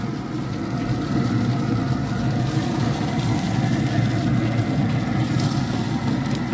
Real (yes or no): yes